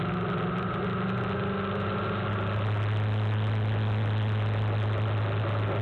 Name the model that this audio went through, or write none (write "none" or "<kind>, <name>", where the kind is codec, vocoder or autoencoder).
none